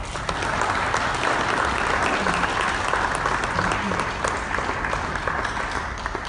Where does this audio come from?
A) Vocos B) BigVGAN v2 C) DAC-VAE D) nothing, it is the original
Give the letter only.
D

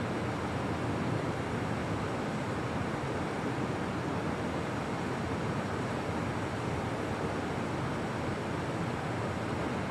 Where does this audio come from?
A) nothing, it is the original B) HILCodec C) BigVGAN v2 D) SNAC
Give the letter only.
A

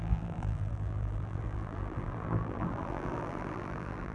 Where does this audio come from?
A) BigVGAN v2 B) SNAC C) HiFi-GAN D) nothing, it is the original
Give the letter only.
A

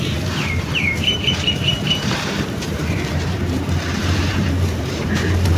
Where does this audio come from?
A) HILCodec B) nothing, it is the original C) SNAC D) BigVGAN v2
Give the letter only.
D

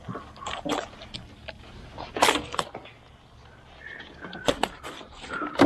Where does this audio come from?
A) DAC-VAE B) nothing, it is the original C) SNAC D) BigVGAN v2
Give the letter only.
B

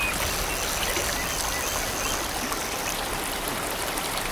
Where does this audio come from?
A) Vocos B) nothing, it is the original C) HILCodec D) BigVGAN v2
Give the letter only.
B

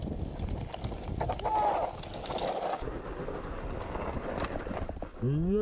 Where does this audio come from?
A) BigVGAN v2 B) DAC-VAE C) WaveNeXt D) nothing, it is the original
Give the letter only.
D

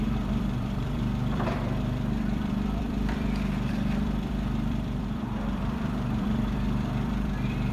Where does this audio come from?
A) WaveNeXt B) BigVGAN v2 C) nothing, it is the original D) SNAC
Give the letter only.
B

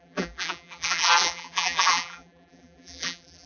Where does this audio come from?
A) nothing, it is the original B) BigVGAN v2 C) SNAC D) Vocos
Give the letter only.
B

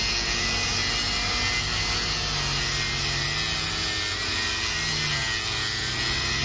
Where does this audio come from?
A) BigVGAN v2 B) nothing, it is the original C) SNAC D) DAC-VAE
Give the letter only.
B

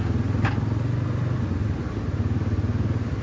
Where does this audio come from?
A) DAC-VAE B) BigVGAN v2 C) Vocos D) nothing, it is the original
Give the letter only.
D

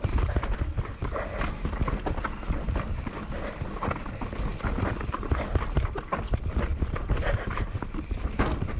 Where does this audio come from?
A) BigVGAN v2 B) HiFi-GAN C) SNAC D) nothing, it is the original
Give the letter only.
D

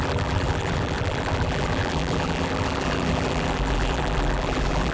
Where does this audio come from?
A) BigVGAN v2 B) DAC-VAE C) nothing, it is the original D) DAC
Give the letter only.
A